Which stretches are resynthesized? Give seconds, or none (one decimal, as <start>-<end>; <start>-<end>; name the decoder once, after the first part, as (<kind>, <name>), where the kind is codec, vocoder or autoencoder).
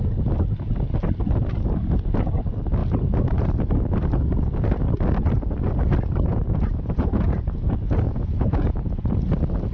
6.3-9.2 (vocoder, Vocos)